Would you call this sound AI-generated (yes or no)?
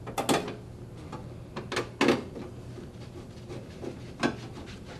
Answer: no